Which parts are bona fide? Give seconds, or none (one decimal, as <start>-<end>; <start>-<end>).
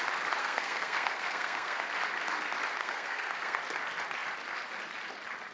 0.0-0.4; 1.9-2.8; 3.6-5.5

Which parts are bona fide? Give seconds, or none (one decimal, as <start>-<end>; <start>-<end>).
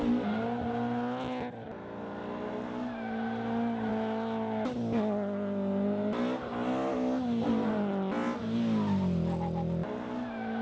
0.0-10.6